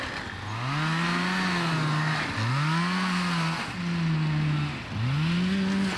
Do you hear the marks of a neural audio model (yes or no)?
no